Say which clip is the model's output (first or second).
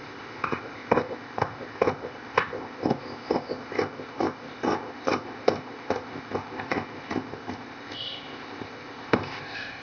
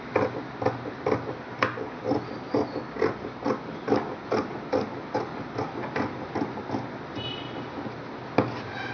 first